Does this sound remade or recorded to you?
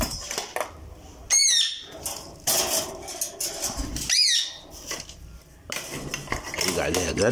recorded